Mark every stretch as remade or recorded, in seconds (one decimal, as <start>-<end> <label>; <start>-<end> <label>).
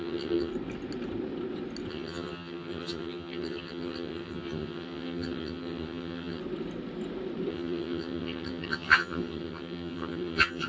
0.0-0.5 remade; 0.5-1.9 recorded; 1.9-6.4 remade; 6.4-7.5 recorded; 7.5-10.7 remade